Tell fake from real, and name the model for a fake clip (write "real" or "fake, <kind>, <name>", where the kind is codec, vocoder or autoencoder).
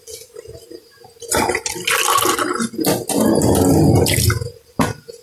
real